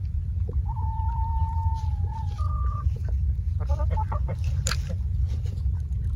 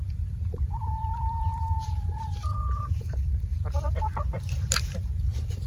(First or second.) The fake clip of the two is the second